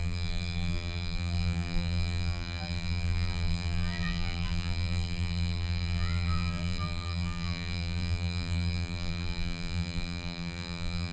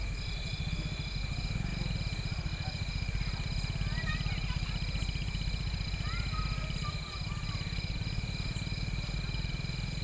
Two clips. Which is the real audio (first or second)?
second